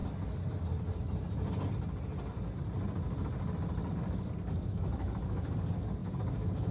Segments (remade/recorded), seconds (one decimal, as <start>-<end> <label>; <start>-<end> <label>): 0.0-3.9 recorded; 3.9-6.7 remade